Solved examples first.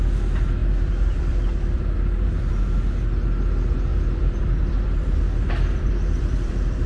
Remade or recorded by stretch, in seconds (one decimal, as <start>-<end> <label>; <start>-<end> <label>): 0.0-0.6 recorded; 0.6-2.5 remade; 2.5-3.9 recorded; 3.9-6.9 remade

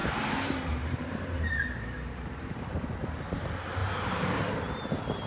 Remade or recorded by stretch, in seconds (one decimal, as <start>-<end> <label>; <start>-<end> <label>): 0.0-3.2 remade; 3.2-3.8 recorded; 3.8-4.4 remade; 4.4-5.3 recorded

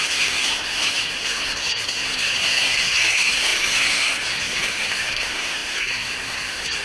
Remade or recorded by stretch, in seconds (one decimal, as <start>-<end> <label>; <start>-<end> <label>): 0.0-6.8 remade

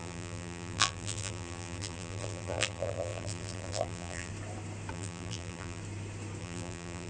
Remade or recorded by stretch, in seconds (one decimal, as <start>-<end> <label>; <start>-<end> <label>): 0.0-4.3 remade; 4.3-4.9 recorded; 4.9-5.8 remade; 5.8-6.4 recorded; 6.4-7.1 remade

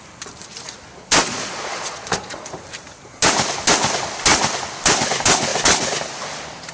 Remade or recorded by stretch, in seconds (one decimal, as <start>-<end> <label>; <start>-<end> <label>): 0.0-1.2 recorded; 1.2-2.3 remade; 2.3-6.7 recorded

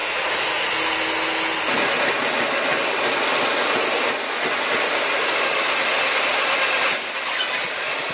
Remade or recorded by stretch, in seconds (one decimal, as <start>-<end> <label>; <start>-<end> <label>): 0.0-6.3 recorded; 6.3-7.1 remade; 7.1-8.1 recorded